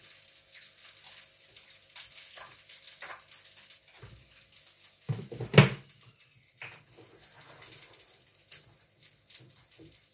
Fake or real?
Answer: real